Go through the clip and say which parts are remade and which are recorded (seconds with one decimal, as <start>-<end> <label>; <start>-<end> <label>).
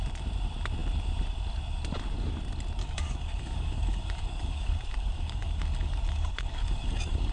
0.0-2.8 recorded; 2.8-7.3 remade